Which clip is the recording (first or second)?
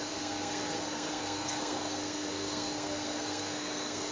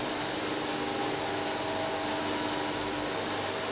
second